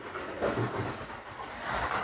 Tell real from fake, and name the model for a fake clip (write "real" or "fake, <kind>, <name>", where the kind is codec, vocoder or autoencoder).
real